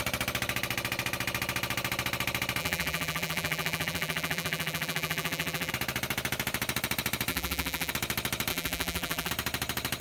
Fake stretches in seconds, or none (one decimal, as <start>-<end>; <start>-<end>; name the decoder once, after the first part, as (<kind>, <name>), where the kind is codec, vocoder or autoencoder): 2.6-5.7 (vocoder, BigVGAN v2); 7.3-7.9; 8.5-9.3